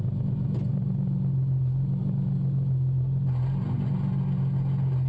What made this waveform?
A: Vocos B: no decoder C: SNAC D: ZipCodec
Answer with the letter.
B